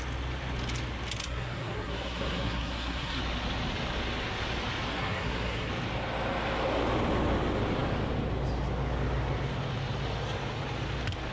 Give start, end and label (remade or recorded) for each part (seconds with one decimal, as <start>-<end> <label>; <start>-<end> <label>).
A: 0.0-1.2 recorded; 1.2-3.2 remade; 3.2-4.9 recorded; 4.9-5.7 remade; 5.7-11.3 recorded